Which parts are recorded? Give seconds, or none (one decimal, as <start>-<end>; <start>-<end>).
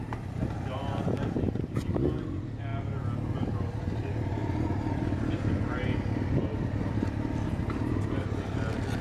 0.0-9.0